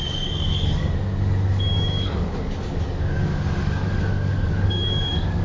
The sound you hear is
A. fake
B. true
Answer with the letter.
A